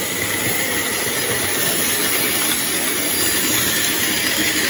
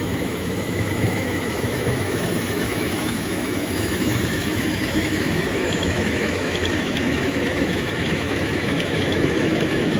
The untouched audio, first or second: first